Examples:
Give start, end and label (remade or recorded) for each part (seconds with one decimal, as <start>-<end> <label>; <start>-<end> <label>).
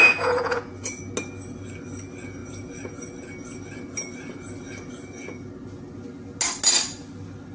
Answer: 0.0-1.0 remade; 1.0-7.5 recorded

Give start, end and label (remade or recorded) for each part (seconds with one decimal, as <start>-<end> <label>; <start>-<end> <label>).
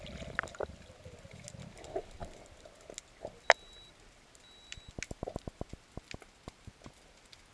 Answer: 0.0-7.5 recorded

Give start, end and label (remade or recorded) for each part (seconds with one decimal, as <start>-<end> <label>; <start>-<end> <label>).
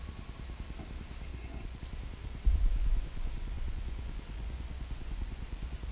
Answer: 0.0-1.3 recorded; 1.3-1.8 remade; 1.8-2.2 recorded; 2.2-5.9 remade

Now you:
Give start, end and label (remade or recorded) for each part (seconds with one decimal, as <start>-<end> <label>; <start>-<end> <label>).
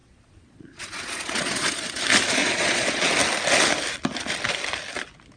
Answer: 0.0-2.0 remade; 2.0-2.4 recorded; 2.4-3.1 remade; 3.1-5.4 recorded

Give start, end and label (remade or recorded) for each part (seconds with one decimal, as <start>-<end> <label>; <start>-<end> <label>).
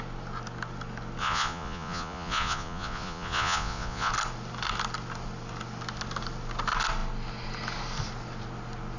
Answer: 0.0-1.2 recorded; 1.2-4.1 remade; 4.1-9.0 recorded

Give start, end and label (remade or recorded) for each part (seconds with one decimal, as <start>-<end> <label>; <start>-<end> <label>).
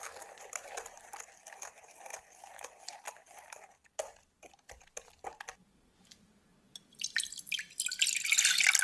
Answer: 0.0-8.8 recorded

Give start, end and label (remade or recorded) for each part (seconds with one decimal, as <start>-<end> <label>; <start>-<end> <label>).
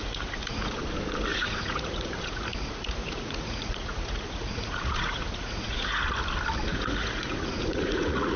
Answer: 0.0-0.8 remade; 0.8-1.3 recorded; 1.3-6.0 remade; 6.0-6.7 recorded; 6.7-8.4 remade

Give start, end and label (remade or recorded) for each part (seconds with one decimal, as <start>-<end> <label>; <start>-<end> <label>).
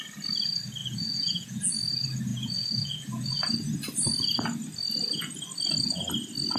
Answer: 0.0-0.8 recorded; 0.8-1.7 remade; 1.7-2.3 recorded; 2.3-3.4 remade; 3.4-6.6 recorded